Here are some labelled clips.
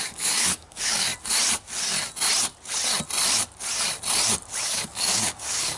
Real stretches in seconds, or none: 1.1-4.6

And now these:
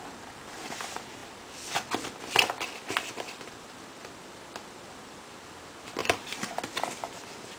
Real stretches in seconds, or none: 0.0-6.0; 6.6-7.6

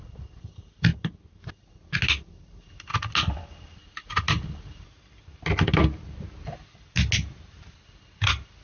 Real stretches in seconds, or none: 0.0-8.6

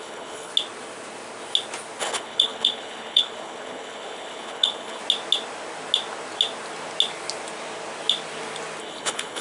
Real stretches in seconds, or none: 0.5-2.0; 5.0-8.8